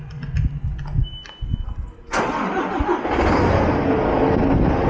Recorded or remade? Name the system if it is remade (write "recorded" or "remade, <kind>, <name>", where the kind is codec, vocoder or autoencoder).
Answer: recorded